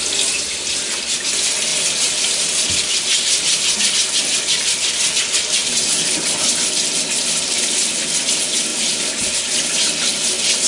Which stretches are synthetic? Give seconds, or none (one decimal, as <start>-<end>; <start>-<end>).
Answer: 1.7-3.9; 8.7-9.3